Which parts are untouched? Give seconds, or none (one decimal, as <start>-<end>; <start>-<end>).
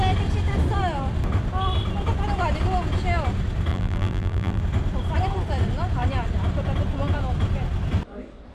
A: 0.0-3.7; 4.6-8.5